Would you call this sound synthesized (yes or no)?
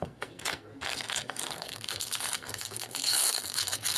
yes